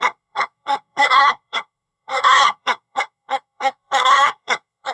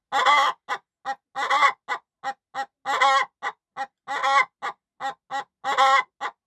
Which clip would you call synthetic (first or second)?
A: first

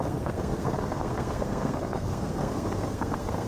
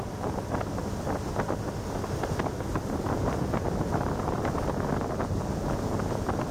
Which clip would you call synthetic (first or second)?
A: first